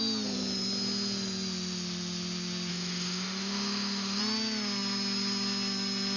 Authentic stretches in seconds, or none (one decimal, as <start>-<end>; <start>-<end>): 0.0-2.7; 4.2-6.2